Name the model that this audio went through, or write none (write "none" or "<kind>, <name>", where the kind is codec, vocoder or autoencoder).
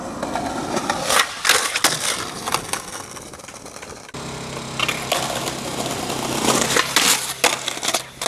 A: none